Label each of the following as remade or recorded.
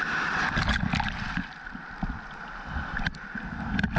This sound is recorded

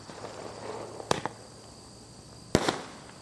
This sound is recorded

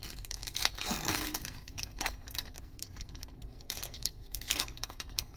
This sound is remade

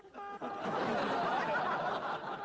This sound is recorded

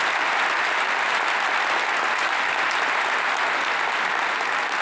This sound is recorded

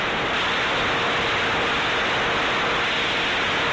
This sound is recorded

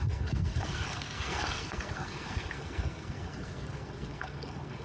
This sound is remade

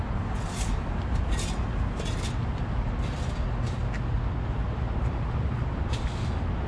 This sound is recorded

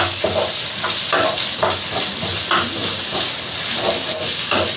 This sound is recorded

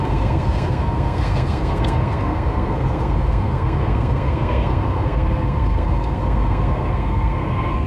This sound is remade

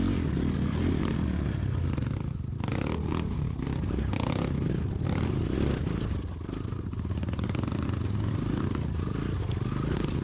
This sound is recorded